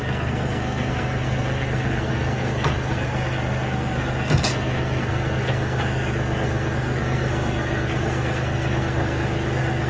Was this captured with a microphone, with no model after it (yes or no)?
no